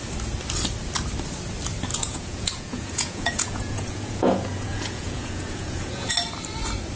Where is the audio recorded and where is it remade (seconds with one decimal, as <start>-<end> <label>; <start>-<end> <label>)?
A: 0.0-1.9 recorded; 1.9-6.1 remade; 6.1-7.0 recorded